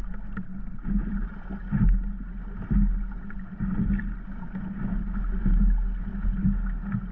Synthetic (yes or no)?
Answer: no